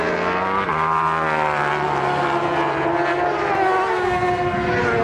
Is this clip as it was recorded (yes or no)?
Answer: yes